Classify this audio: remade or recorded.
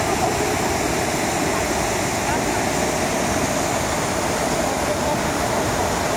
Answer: recorded